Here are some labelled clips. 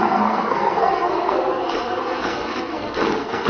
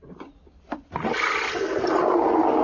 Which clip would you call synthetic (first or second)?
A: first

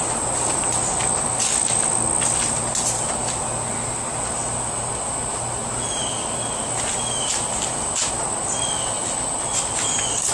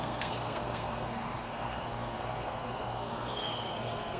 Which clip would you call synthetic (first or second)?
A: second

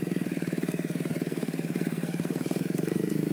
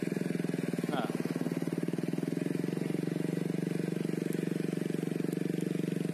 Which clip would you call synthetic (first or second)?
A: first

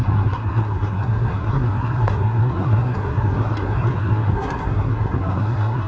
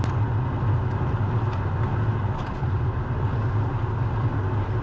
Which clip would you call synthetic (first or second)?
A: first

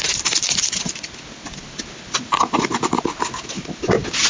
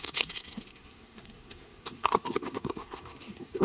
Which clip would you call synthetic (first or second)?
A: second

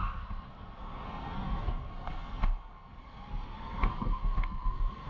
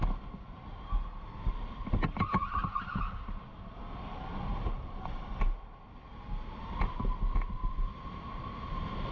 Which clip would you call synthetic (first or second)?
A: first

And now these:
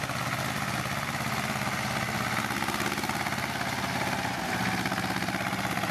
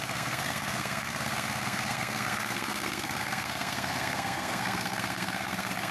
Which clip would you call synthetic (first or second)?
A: second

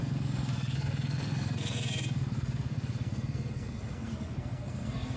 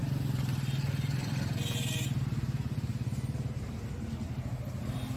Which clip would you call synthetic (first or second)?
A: first